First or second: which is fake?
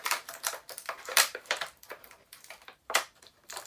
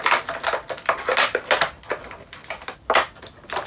first